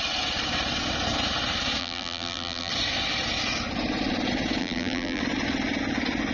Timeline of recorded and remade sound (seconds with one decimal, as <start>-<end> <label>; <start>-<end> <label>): 0.0-1.8 recorded; 1.8-2.7 remade; 2.7-4.6 recorded; 4.6-5.2 remade; 5.2-6.3 recorded

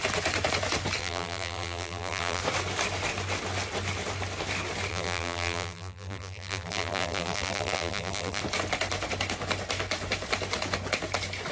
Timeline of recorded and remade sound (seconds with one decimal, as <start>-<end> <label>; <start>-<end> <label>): 0.0-1.0 recorded; 1.0-2.4 remade; 2.4-4.9 recorded; 4.9-8.4 remade; 8.4-11.5 recorded